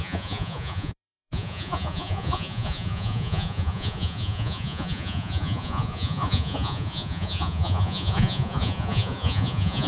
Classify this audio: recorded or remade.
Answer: remade